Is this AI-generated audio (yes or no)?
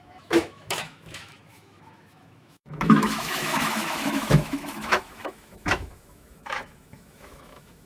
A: yes